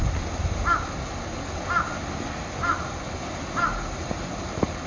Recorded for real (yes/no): yes